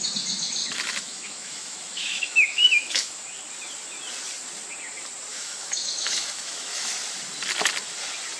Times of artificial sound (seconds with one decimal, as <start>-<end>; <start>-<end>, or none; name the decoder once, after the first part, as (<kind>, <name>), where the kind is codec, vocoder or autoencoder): 0.6-3.2 (autoencoder, DAC-VAE); 5.3-6.9